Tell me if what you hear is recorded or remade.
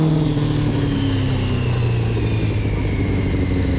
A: recorded